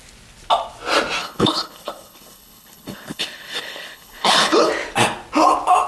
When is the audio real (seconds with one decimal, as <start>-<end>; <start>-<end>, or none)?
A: 0.0-1.2; 4.7-5.9